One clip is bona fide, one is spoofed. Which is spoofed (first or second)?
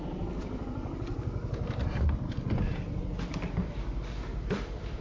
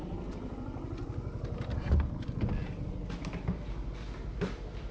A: first